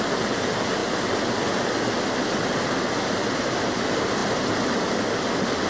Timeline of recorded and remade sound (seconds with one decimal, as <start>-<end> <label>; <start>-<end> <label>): 0.0-5.7 recorded